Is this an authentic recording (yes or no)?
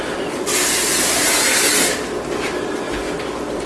yes